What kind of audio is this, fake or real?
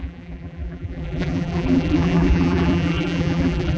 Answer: fake